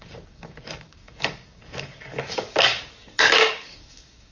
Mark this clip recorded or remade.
remade